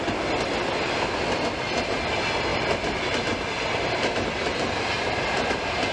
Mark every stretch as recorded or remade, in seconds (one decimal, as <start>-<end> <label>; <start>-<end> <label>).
0.0-5.9 recorded